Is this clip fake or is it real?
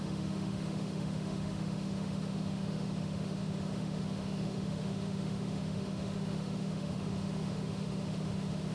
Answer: fake